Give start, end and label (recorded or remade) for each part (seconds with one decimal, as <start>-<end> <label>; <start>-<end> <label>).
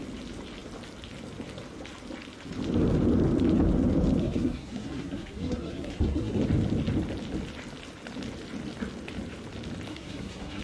0.0-4.2 recorded; 4.2-6.4 remade; 6.4-9.9 recorded; 9.9-10.6 remade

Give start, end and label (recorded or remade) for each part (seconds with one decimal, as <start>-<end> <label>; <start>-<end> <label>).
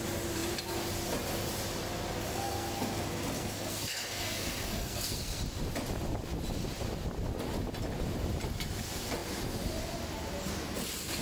0.0-2.3 recorded; 2.3-5.4 remade; 5.4-11.2 recorded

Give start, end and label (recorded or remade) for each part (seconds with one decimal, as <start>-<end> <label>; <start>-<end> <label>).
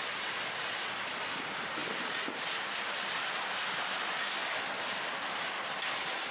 0.0-6.3 recorded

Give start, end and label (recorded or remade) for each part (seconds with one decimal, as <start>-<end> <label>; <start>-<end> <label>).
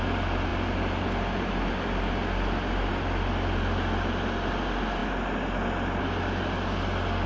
0.0-7.3 recorded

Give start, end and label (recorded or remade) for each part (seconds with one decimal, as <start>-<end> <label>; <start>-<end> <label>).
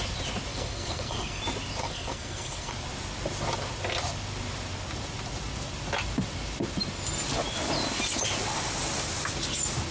0.0-0.5 recorded; 0.5-1.4 remade; 1.4-1.8 recorded; 1.8-2.7 remade; 2.7-9.9 recorded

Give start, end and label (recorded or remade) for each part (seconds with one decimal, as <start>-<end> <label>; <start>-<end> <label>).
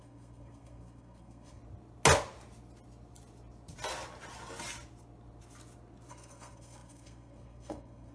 0.0-1.6 remade; 1.6-6.1 recorded; 6.1-8.1 remade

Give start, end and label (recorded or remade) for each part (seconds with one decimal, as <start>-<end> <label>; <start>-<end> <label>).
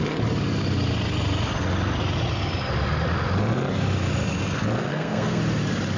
0.0-4.8 recorded; 4.8-5.4 remade; 5.4-6.0 recorded